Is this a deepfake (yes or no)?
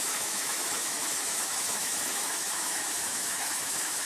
yes